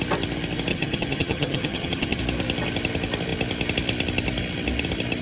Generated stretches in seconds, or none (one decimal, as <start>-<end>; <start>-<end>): 0.7-2.2